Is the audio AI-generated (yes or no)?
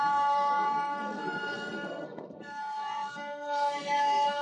yes